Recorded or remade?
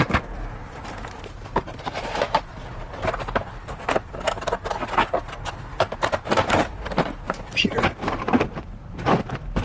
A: remade